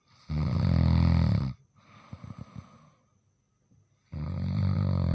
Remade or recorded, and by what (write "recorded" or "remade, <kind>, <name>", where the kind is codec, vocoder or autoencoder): recorded